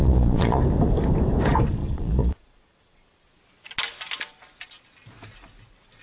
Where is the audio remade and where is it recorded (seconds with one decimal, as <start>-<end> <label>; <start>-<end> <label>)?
0.0-0.6 remade; 0.6-1.8 recorded; 1.8-3.4 remade; 3.4-6.0 recorded